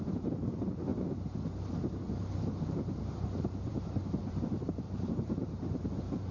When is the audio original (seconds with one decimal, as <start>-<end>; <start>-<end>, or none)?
0.9-3.0